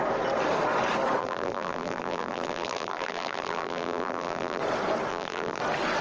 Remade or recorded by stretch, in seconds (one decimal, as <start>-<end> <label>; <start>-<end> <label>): 0.0-1.2 recorded; 1.2-4.6 remade; 4.6-5.1 recorded; 5.1-5.6 remade; 5.6-6.0 recorded